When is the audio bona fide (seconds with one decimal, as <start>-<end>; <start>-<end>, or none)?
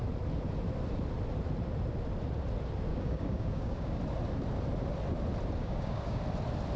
0.0-2.9; 4.0-5.6; 6.2-6.8